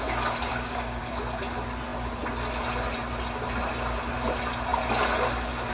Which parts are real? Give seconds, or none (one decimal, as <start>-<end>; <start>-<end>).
0.0-0.5; 1.0-5.7